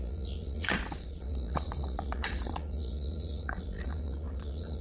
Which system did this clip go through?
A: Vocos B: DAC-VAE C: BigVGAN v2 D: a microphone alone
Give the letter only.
A